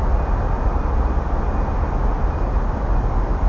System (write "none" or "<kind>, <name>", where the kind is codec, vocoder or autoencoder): none